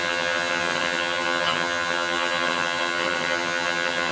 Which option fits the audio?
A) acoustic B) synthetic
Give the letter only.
B